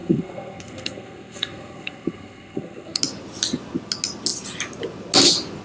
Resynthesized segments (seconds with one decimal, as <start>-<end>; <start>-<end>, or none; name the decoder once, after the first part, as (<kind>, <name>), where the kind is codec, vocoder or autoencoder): 0.0-3.0 (codec, SNAC)